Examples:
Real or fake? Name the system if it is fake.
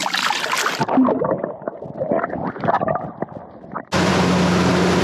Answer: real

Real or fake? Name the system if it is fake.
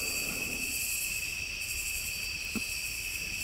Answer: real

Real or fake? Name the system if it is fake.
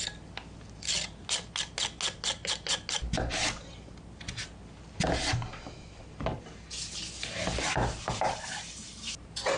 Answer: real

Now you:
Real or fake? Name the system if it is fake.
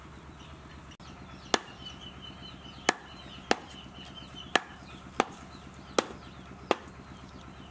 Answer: real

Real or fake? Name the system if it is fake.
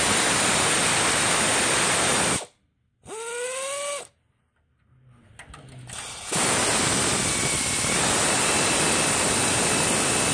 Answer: real